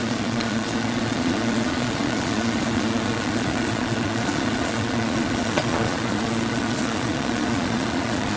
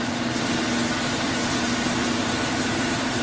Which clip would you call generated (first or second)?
first